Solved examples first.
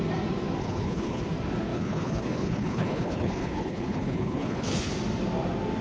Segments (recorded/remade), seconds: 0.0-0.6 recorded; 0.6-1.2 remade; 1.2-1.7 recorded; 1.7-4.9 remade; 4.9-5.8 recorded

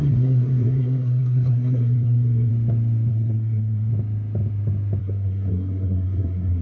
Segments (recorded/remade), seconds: 0.0-2.5 remade; 2.5-3.1 recorded; 3.1-3.9 remade; 3.9-5.0 recorded; 5.0-6.6 remade

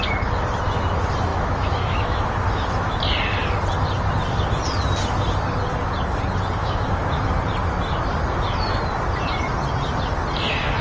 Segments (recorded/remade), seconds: 0.0-1.3 recorded; 1.3-3.0 remade; 3.0-6.6 recorded; 6.6-7.3 remade; 7.3-10.8 recorded

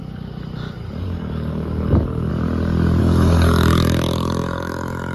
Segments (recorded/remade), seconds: 0.0-1.0 recorded; 1.0-2.3 remade; 2.3-3.0 recorded; 3.0-5.1 remade

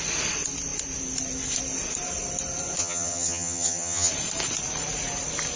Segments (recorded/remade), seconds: 0.0-2.8 recorded; 2.8-4.1 remade; 4.1-5.6 recorded

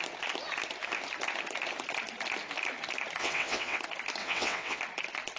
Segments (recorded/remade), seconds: 0.0-3.2 recorded; 3.2-3.8 remade; 3.8-4.2 recorded; 4.2-4.8 remade; 4.8-5.4 recorded